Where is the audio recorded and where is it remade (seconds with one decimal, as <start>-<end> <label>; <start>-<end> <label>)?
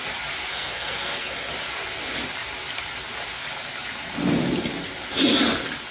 0.0-0.5 recorded; 0.5-1.5 remade; 1.5-5.9 recorded